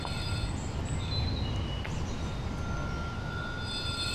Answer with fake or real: real